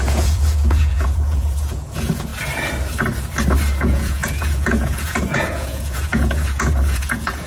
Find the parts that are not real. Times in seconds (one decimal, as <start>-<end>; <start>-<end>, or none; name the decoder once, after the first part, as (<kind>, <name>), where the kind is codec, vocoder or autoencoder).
0.0-2.3 (vocoder, Vocos); 3.8-7.5